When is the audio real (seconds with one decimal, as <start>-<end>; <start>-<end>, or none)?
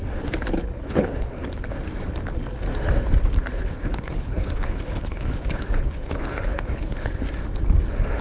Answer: 0.0-0.7; 1.3-3.5; 7.2-8.2